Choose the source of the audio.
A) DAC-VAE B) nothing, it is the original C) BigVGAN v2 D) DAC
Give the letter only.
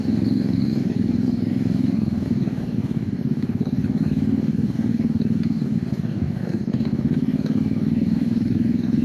D